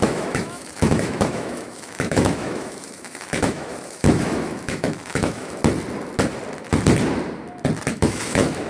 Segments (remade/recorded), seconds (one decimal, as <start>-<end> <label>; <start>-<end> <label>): 0.0-5.6 remade; 5.6-7.9 recorded; 7.9-8.7 remade